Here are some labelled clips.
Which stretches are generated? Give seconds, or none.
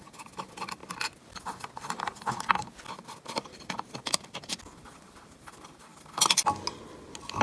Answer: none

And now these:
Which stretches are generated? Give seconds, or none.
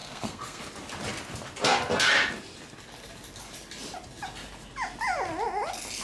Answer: 0.0-0.6 (codec, SNAC)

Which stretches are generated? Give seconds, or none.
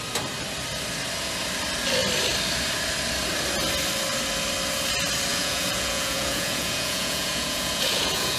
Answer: 5.3-8.4 (vocoder, Vocos)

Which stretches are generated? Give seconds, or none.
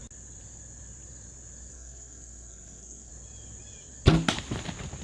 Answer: 1.7-3.1 (codec, SNAC)